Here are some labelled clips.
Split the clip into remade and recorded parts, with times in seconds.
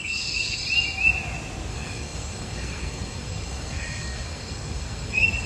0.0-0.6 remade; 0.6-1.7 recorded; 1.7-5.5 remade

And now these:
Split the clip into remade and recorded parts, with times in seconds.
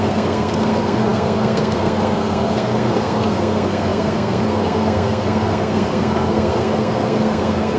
0.0-7.8 remade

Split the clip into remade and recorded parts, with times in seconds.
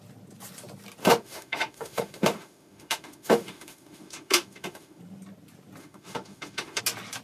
0.0-1.0 recorded; 1.0-5.0 remade; 5.0-5.8 recorded; 5.8-6.8 remade; 6.8-7.2 recorded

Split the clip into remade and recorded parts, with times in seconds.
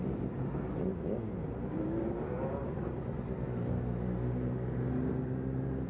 0.0-5.9 recorded